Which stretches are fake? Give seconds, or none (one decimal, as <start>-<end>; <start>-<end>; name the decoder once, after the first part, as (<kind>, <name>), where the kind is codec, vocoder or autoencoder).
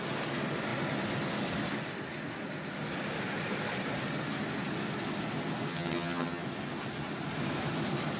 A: 5.7-6.4 (vocoder, HiFi-GAN)